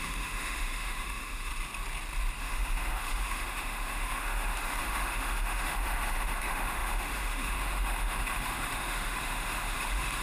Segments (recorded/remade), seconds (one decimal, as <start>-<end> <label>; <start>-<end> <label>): 0.0-1.5 remade; 1.5-2.4 recorded; 2.4-10.2 remade

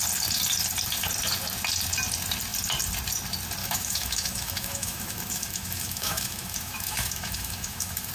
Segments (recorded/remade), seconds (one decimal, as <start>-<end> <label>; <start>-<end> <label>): 0.0-3.6 recorded; 3.6-8.1 remade

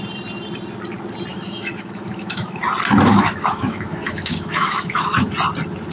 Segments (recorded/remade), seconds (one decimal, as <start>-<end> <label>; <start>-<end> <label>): 0.0-1.3 recorded; 1.3-2.6 remade; 2.6-3.1 recorded; 3.1-5.3 remade; 5.3-5.9 recorded